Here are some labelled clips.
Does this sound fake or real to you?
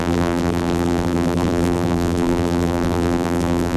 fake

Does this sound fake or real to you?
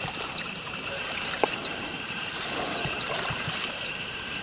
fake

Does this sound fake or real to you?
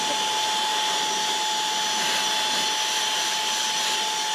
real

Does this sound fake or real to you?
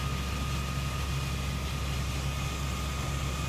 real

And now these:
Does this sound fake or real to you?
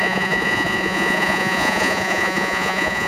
fake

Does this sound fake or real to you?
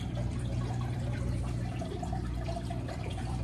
fake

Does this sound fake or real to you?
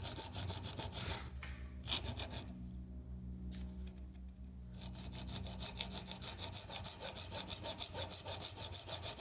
real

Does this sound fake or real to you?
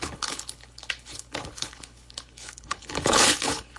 fake